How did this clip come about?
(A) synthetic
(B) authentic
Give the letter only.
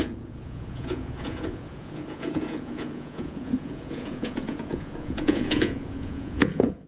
A